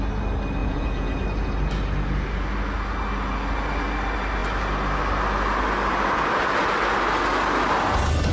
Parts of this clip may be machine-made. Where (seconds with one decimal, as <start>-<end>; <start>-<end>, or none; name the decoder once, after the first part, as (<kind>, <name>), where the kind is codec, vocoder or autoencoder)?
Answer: 0.6-1.2 (vocoder, Vocos)